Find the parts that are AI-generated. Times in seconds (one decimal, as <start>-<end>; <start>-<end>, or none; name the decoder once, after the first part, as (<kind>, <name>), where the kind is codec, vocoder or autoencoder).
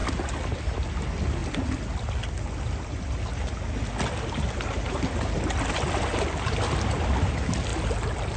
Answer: none